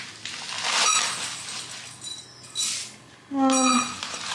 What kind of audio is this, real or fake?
real